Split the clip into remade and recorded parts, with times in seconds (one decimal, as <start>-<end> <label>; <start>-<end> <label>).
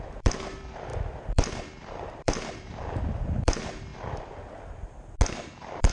0.0-3.9 remade; 3.9-5.3 recorded; 5.3-5.9 remade